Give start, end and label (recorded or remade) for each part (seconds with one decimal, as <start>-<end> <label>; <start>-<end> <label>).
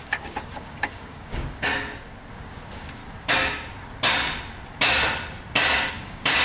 0.0-1.7 remade; 1.7-2.3 recorded; 2.3-3.0 remade; 3.0-5.9 recorded; 5.9-6.4 remade